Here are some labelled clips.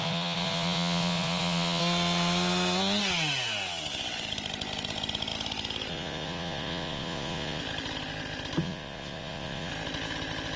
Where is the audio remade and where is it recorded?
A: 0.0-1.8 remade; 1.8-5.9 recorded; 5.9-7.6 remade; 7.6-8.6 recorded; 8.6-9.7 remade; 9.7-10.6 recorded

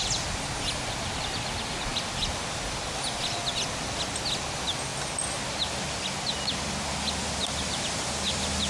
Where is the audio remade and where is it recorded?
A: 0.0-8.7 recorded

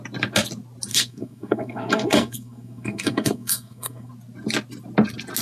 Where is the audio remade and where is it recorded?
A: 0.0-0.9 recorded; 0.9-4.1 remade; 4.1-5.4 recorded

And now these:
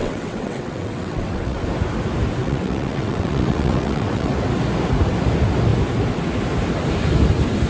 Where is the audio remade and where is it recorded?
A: 0.0-1.6 remade; 1.6-2.4 recorded; 2.4-4.3 remade; 4.3-7.7 recorded